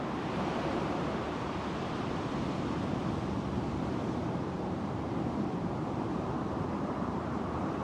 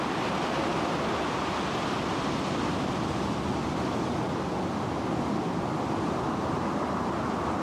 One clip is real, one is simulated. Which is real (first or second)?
second